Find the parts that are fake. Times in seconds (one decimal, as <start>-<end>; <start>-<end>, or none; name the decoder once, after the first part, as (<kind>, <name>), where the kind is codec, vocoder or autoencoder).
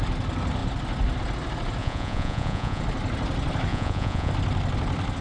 1.8-2.8 (vocoder, Vocos); 3.7-4.3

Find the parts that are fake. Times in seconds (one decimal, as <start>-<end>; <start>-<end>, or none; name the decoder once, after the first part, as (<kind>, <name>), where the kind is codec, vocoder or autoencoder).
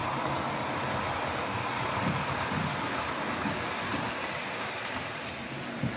none